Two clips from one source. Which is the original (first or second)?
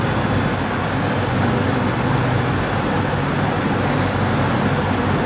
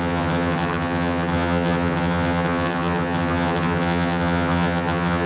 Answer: first